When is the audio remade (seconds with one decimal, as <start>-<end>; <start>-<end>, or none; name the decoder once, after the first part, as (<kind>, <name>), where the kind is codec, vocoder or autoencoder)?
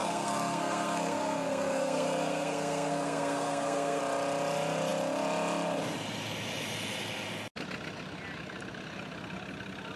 0.0-4.0 (codec, SNAC)